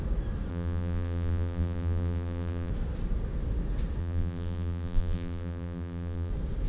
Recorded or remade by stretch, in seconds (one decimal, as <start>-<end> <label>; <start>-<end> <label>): 0.0-0.5 recorded; 0.5-2.7 remade; 2.7-4.0 recorded; 4.0-6.3 remade; 6.3-6.7 recorded